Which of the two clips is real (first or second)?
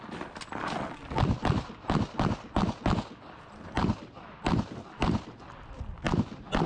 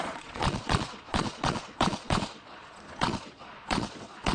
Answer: first